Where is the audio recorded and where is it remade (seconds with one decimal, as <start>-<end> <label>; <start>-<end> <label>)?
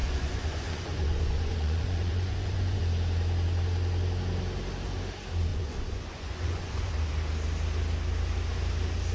0.0-2.8 remade; 2.8-5.5 recorded; 5.5-6.9 remade; 6.9-9.1 recorded